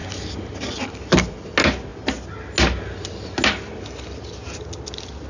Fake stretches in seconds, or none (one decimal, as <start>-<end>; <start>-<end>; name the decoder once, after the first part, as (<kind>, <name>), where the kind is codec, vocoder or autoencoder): none